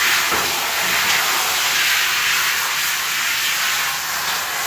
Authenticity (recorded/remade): recorded